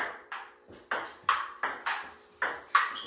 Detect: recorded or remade recorded